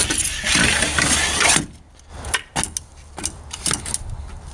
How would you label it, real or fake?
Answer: real